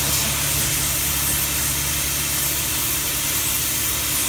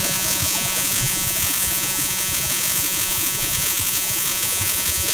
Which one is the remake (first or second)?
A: second